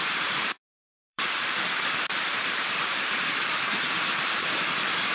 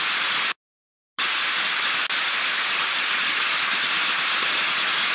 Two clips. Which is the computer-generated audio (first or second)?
first